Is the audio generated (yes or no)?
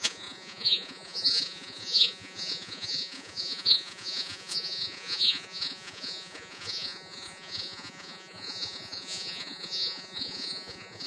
yes